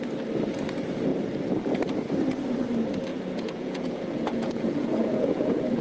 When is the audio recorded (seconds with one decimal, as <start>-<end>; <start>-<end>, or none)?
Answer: 0.0-3.1